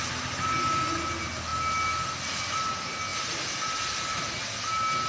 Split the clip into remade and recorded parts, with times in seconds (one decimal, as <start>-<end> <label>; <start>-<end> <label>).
0.0-5.1 recorded